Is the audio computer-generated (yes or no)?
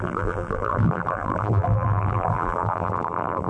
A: yes